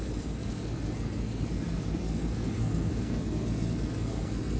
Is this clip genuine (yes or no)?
no